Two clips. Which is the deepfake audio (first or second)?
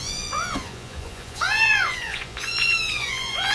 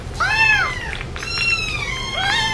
first